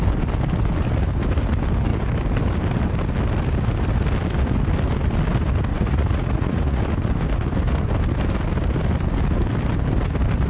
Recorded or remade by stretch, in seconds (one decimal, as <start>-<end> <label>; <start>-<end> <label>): 0.0-5.7 recorded; 5.7-6.8 remade; 6.8-10.5 recorded